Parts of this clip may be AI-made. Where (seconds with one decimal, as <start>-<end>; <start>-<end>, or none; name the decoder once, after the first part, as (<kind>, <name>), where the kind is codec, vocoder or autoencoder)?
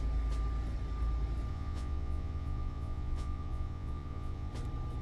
1.5-4.5 (vocoder, Vocos)